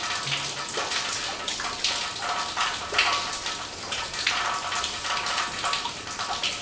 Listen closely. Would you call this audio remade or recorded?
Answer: recorded